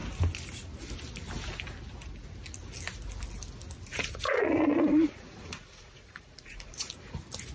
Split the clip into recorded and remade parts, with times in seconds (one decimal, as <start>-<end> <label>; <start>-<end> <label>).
0.0-3.9 recorded; 3.9-6.9 remade; 6.9-7.5 recorded

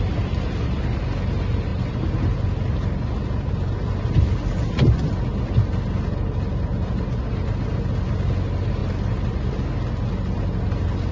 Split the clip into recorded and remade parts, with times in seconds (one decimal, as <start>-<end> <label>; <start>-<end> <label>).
0.0-11.1 recorded